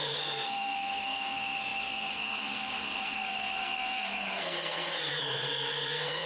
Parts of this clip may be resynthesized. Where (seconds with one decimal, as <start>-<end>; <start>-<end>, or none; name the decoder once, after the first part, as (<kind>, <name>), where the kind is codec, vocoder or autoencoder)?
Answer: 0.0-6.3 (codec, SNAC)